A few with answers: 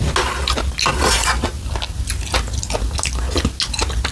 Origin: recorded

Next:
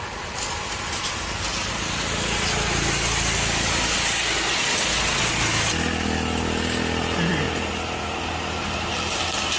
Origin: recorded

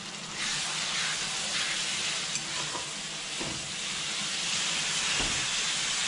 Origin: recorded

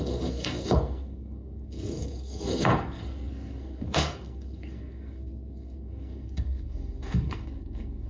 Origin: remade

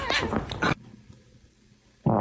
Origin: recorded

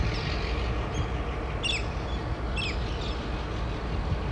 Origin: recorded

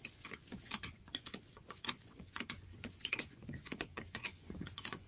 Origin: remade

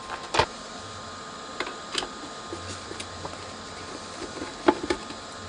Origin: recorded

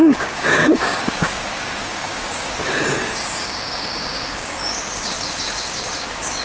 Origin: remade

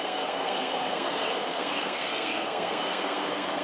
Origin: remade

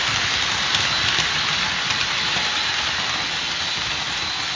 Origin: recorded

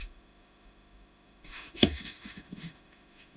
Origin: remade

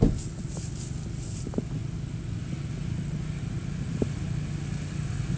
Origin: recorded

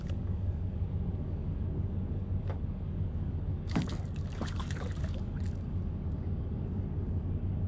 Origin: remade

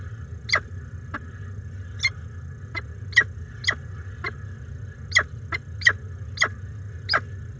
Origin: recorded